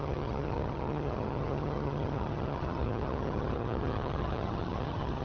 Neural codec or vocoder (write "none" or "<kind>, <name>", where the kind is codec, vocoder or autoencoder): vocoder, HiFi-GAN